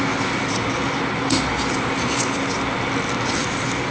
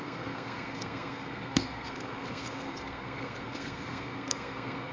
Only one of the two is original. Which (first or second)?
first